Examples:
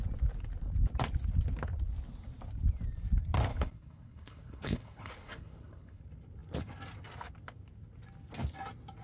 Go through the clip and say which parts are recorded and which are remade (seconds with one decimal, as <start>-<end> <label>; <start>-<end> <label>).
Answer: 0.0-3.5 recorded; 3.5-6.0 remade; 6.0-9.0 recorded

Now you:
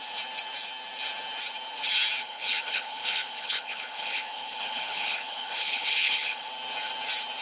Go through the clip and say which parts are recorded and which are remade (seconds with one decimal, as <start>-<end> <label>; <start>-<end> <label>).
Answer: 0.0-2.2 recorded; 2.2-6.5 remade; 6.5-7.4 recorded

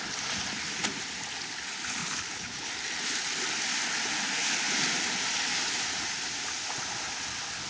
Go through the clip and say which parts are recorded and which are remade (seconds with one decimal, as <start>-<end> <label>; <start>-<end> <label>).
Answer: 0.0-2.0 recorded; 2.0-2.7 remade; 2.7-7.7 recorded

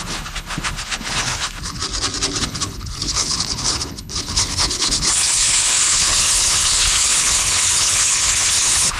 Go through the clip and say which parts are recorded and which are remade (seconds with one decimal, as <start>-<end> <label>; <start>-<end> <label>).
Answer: 0.0-1.8 remade; 1.8-2.4 recorded; 2.4-9.0 remade